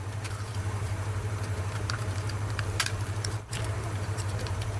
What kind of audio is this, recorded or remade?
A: remade